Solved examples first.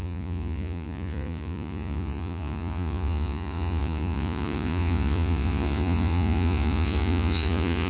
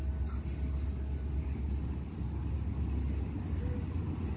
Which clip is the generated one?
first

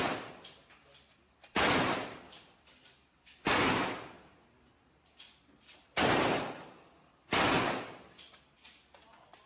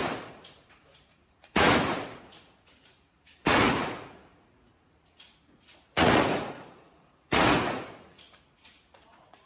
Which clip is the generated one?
second